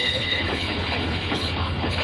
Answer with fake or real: fake